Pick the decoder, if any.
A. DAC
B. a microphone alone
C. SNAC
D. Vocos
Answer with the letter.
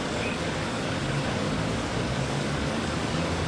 A